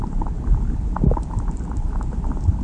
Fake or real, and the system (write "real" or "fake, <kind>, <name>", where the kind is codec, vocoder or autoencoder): real